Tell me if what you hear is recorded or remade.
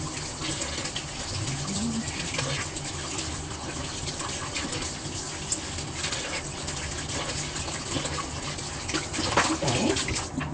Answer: recorded